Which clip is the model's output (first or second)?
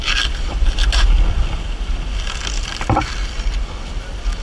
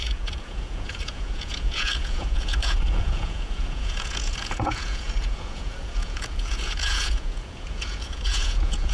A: second